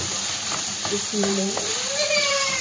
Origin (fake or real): fake